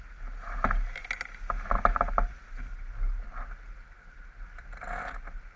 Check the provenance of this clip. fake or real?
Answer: real